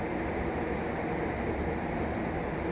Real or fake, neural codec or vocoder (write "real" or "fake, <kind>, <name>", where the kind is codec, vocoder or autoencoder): fake, vocoder, BigVGAN v2